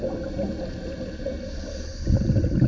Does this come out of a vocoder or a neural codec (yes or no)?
no